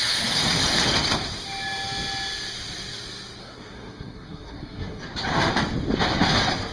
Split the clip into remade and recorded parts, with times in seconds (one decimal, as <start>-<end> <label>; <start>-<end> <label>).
0.0-3.4 recorded; 3.4-5.0 remade; 5.0-6.7 recorded